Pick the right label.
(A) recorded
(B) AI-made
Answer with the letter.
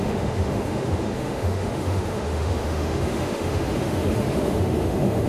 B